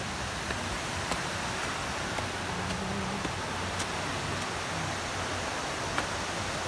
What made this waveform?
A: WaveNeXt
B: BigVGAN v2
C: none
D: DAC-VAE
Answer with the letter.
C